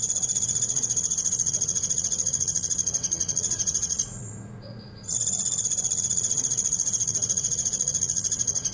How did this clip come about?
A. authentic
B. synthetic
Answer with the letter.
B